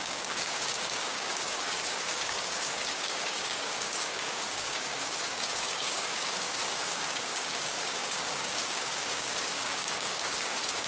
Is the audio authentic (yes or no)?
no